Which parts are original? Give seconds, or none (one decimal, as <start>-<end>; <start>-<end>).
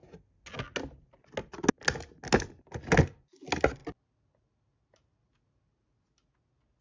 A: 0.0-6.8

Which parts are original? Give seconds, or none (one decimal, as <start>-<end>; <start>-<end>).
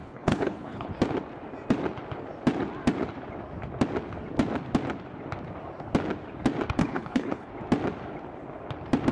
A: 0.9-6.8; 7.5-9.1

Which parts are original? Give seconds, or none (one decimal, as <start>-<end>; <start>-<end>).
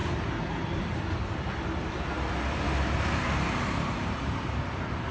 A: 0.0-5.1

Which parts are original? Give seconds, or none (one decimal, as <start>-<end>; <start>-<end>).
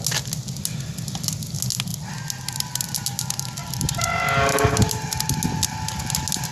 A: 0.0-6.5